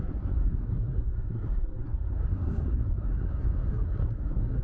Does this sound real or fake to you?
fake